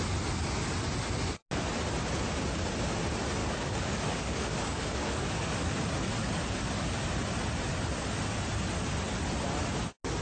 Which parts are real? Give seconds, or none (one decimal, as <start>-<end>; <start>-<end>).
0.0-3.4; 5.7-10.2